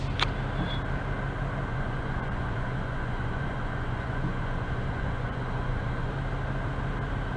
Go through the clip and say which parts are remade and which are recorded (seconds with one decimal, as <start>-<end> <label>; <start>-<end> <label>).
0.0-1.7 recorded; 1.7-6.1 remade; 6.1-7.4 recorded